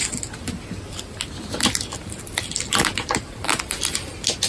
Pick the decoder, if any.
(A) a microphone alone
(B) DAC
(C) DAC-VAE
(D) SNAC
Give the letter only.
A